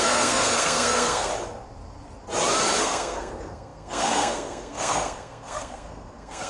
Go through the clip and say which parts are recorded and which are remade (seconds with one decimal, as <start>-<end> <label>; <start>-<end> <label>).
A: 0.0-1.3 remade; 1.3-2.8 recorded; 2.8-6.5 remade